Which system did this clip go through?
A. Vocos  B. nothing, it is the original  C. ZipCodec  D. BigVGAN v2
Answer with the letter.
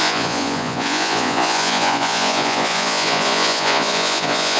A